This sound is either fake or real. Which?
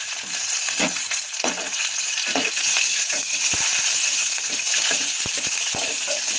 fake